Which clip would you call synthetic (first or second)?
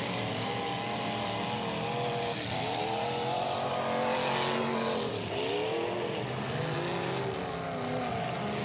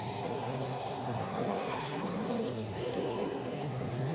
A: second